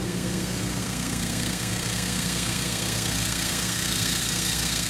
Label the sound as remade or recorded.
remade